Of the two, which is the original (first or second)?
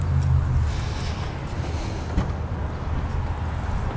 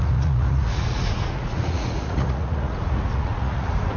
first